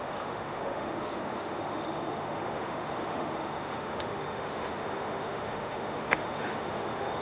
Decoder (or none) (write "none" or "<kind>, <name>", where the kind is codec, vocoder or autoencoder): autoencoder, DAC-VAE